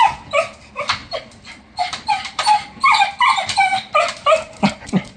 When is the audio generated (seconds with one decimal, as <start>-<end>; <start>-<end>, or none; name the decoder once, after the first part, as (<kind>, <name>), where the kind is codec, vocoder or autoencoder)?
1.0-4.1 (vocoder, BigVGAN v2)